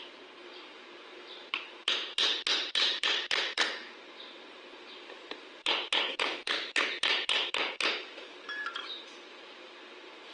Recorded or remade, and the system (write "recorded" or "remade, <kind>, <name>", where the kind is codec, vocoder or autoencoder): remade, vocoder, BigVGAN v2